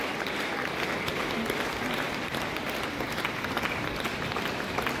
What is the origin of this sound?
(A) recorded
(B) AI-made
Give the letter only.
A